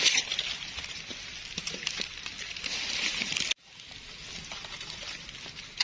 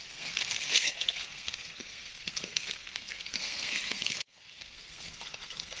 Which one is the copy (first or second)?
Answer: second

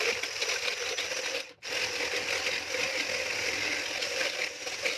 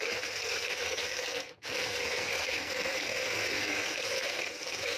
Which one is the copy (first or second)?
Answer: second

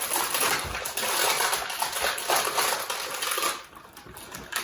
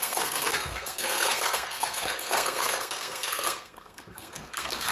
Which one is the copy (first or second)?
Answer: second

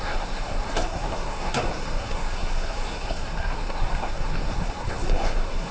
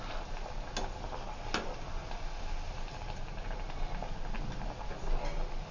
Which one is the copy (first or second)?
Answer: first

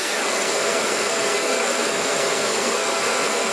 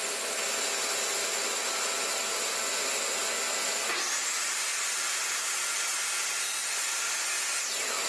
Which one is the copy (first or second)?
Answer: first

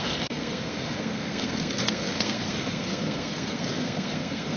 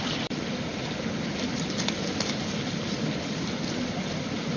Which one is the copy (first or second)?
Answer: first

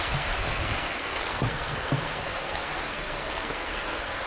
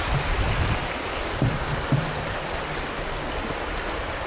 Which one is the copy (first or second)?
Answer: first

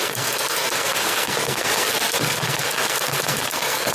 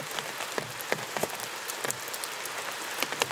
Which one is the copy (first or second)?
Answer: first